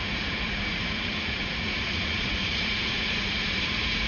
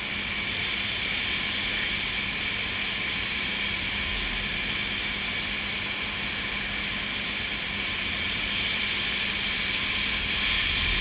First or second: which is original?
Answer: second